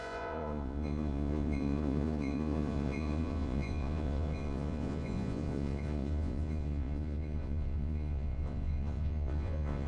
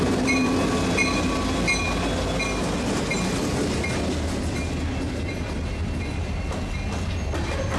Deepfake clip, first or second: first